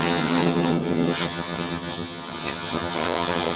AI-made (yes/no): yes